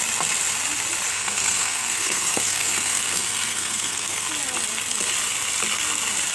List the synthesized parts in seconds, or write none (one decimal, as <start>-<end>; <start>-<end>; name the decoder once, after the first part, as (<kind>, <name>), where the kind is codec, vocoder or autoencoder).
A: 1.1-4.3 (codec, SNAC)